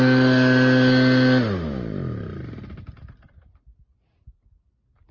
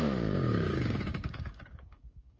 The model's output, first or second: second